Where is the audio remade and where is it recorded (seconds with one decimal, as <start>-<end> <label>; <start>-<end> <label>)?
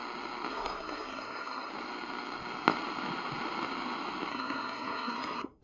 0.0-0.5 recorded; 0.5-1.7 remade; 1.7-4.3 recorded; 4.3-5.6 remade